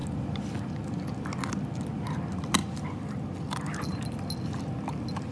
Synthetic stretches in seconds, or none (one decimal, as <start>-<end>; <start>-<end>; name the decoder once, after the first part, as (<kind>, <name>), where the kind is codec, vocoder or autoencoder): 2.6-3.8 (vocoder, BigVGAN v2)